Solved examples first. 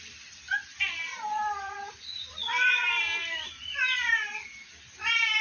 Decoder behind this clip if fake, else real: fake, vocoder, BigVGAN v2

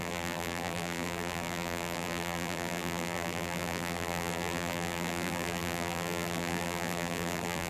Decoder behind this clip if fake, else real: fake, vocoder, BigVGAN v2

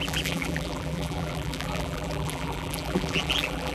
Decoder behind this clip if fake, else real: fake, vocoder, BigVGAN v2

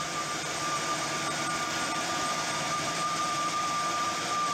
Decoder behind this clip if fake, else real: fake, vocoder, BigVGAN v2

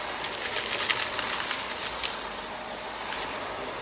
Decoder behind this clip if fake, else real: real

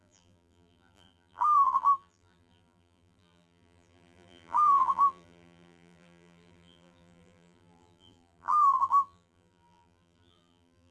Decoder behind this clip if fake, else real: fake, vocoder, BigVGAN v2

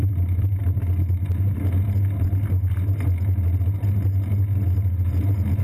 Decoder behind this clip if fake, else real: real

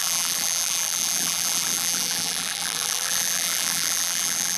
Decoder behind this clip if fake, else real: fake, vocoder, BigVGAN v2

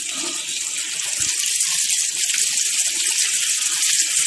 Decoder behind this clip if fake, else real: real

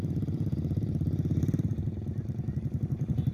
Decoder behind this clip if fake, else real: fake, vocoder, BigVGAN v2